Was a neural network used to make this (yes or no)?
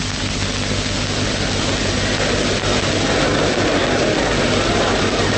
no